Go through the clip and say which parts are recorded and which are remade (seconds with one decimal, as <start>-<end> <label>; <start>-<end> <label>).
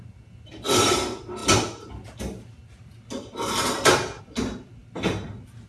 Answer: 0.0-5.7 recorded